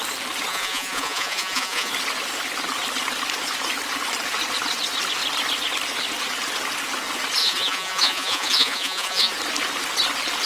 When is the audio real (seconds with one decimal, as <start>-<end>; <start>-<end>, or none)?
0.0-0.5; 1.9-7.4; 9.3-10.5